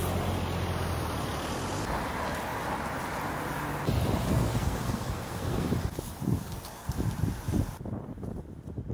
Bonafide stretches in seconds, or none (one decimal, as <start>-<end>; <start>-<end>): 0.0-4.3; 5.7-6.3; 6.9-8.9